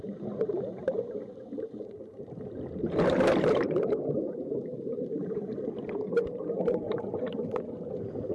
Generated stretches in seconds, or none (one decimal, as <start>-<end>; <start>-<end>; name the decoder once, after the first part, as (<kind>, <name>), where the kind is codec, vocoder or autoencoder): 0.0-5.5 (vocoder, BigVGAN v2); 6.1-8.3